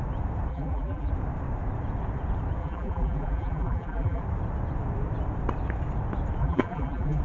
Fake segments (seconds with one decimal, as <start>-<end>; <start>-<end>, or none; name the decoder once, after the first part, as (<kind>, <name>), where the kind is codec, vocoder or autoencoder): 0.5-1.1 (vocoder, BigVGAN v2); 2.6-4.2; 6.4-7.2

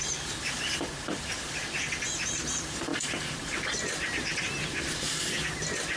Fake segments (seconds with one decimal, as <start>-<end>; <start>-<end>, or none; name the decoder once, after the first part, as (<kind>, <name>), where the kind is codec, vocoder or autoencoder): 2.9-3.7 (vocoder, BigVGAN v2); 4.5-5.2

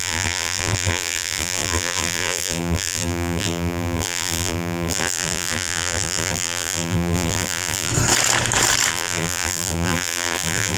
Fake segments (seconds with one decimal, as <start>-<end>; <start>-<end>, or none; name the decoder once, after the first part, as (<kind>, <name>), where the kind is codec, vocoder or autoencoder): 0.0-7.9 (vocoder, BigVGAN v2); 8.9-10.8

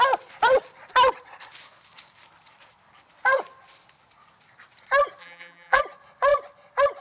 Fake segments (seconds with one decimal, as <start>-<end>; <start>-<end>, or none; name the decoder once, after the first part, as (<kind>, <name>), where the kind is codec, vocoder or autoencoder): 5.2-5.8 (vocoder, BigVGAN v2)

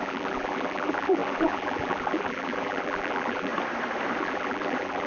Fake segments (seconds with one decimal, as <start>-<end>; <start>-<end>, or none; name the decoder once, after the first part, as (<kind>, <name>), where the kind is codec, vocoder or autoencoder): 0.0-3.5 (vocoder, BigVGAN v2); 4.2-5.1

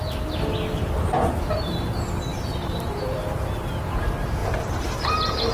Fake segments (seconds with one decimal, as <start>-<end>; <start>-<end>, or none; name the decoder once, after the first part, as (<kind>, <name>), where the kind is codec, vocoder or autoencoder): 2.3-3.5 (vocoder, BigVGAN v2); 4.4-4.9

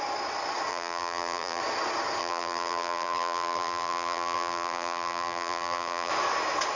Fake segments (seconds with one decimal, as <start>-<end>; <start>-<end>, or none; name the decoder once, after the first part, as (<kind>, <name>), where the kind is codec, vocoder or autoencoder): 0.7-1.6 (vocoder, BigVGAN v2); 2.2-6.1

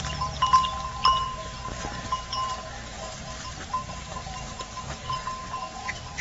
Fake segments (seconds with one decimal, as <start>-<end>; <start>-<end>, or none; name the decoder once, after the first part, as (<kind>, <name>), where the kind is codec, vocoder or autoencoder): 1.1-4.6 (vocoder, BigVGAN v2)